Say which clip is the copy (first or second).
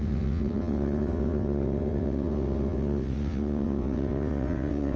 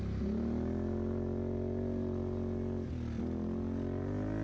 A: first